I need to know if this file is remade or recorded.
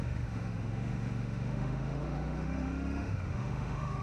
remade